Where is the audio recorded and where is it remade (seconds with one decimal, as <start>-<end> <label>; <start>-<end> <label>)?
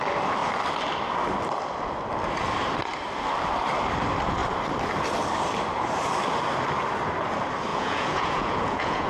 0.0-7.7 recorded; 7.7-9.1 remade